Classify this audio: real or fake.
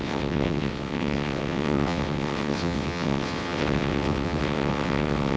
fake